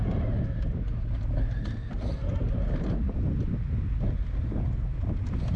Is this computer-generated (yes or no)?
no